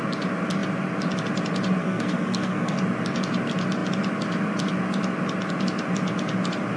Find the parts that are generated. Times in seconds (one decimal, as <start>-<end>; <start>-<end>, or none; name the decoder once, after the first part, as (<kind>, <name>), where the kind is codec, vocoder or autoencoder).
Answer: 1.8-2.8 (codec, SNAC)